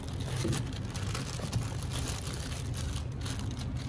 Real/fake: real